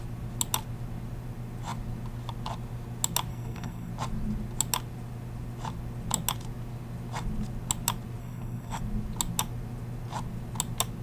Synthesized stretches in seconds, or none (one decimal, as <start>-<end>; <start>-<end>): 3.3-3.9; 8.2-8.8